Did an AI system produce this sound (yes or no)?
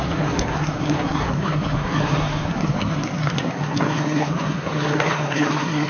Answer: yes